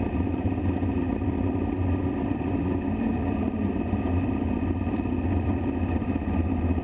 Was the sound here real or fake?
fake